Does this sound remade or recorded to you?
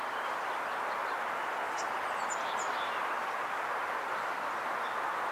recorded